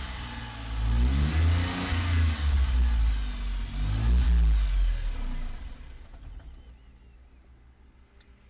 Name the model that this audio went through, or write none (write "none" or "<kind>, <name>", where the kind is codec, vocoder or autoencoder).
none